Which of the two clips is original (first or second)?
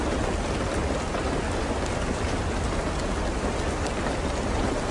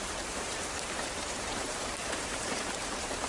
first